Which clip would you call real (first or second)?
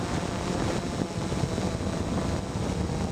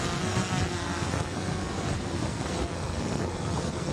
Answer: first